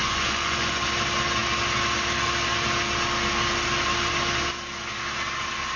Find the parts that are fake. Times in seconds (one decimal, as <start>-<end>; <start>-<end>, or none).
0.0-0.8